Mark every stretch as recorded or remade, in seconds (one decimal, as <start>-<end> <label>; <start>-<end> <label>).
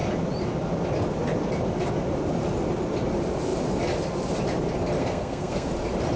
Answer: 0.0-5.0 recorded; 5.0-5.7 remade; 5.7-6.2 recorded